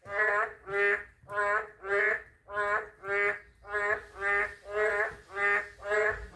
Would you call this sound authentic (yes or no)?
yes